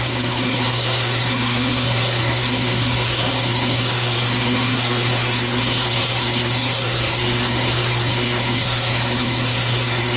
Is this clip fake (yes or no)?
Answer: yes